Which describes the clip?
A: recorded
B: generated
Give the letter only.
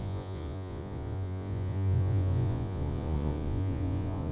B